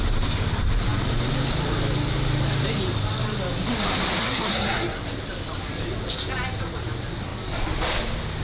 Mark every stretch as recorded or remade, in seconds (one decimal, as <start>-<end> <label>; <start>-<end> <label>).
0.0-4.2 recorded; 4.2-5.0 remade; 5.0-8.4 recorded